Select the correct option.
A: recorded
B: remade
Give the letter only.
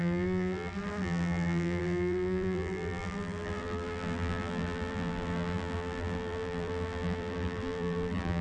B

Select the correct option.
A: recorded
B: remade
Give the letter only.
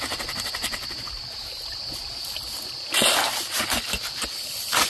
A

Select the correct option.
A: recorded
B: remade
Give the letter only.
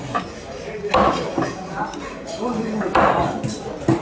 A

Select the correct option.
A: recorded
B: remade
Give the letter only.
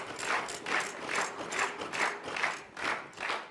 A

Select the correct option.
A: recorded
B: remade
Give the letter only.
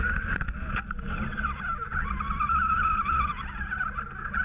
A